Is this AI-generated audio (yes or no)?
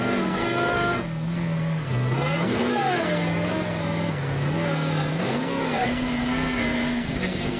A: yes